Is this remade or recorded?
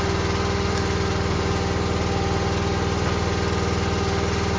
recorded